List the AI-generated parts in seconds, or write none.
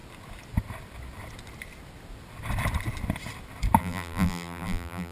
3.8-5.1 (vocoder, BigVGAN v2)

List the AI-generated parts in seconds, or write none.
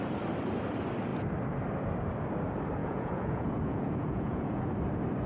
2.8-4.7 (vocoder, Vocos)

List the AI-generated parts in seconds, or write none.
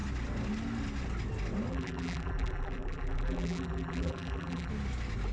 1.7-4.7 (vocoder, BigVGAN v2)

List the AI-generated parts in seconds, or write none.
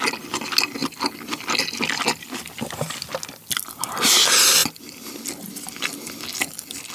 none